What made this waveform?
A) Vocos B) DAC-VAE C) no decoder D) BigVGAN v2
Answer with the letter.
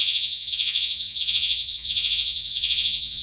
A